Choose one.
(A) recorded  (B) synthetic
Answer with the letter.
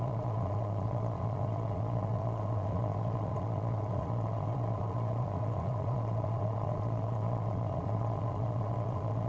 B